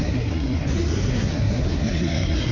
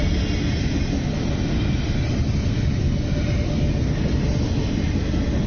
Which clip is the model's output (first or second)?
first